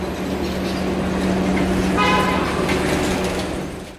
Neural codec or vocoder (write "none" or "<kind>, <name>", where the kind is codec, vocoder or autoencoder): none